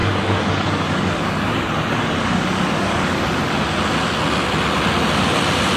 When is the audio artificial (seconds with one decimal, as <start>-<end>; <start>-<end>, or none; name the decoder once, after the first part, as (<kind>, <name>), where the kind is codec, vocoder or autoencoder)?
0.0-3.5 (codec, DAC)